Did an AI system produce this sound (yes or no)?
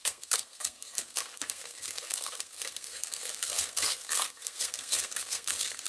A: yes